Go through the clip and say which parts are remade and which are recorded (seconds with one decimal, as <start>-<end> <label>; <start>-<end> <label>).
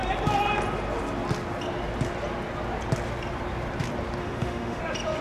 0.0-4.2 recorded; 4.2-4.8 remade; 4.8-5.2 recorded